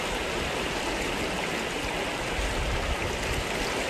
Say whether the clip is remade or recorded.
recorded